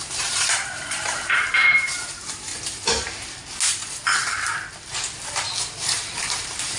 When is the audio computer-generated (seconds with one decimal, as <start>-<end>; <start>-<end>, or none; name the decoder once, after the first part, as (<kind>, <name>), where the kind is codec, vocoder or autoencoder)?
0.0-2.5 (vocoder, BigVGAN v2); 5.8-6.8